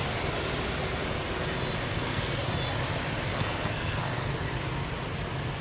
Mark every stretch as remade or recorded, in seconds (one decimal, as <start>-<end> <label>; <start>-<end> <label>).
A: 0.0-1.9 recorded; 1.9-2.4 remade; 2.4-3.3 recorded; 3.3-4.3 remade; 4.3-5.6 recorded